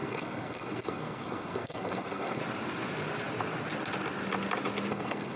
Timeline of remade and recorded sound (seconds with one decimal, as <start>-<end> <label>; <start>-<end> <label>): 0.0-2.4 remade; 2.4-4.9 recorded; 4.9-5.4 remade